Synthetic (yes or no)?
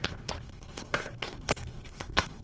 yes